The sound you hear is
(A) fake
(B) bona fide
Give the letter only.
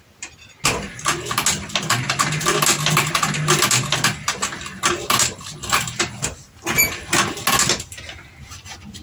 B